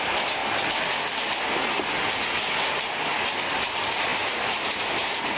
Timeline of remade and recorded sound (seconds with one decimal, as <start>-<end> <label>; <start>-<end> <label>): 0.0-0.4 remade; 0.4-3.5 recorded; 3.5-5.4 remade